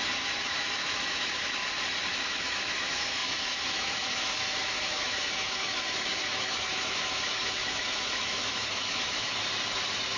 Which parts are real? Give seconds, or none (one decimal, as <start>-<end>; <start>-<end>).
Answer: 1.6-2.1; 9.4-10.2